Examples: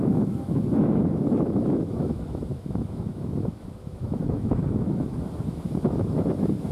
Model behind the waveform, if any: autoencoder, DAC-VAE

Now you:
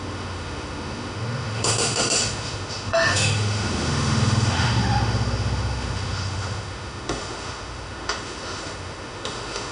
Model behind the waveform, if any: autoencoder, DAC-VAE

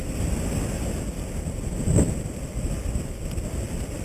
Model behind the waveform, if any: none